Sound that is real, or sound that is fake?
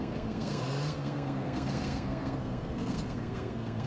fake